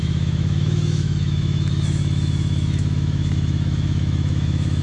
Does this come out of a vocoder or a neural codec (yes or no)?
yes